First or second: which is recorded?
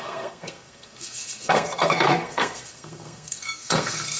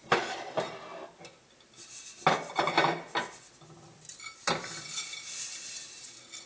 second